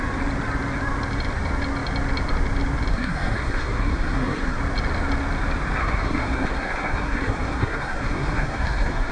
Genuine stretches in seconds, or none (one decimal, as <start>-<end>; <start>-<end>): 0.0-2.9; 4.6-5.8